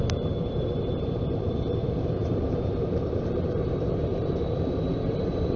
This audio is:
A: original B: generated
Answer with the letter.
B